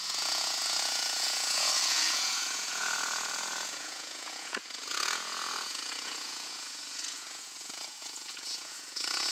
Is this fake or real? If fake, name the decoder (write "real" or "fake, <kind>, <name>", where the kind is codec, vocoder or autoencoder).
fake, vocoder, Vocos